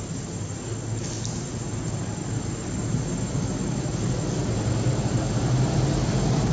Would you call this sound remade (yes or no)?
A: no